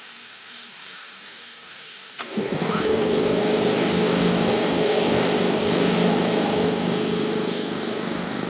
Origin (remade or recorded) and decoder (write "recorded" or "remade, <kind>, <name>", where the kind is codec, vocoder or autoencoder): remade, codec, DAC